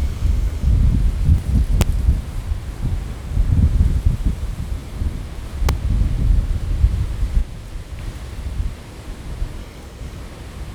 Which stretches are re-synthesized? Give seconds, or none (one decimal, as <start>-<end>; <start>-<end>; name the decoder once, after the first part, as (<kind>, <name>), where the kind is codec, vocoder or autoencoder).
0.0-0.7 (codec, DAC); 9.6-10.2